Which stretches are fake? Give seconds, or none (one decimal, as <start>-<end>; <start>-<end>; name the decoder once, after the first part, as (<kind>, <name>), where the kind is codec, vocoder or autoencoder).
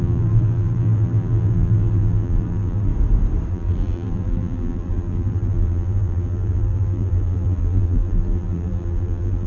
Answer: 0.0-2.9 (vocoder, BigVGAN v2); 3.5-9.5